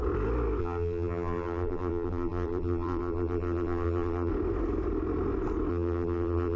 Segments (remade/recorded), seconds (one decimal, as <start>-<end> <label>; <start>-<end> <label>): 0.0-0.6 recorded; 0.6-4.3 remade; 4.3-5.7 recorded; 5.7-6.6 remade